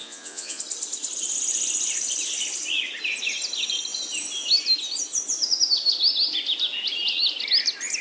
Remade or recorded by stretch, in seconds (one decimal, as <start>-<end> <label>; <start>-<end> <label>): 0.0-0.6 remade; 0.6-8.0 recorded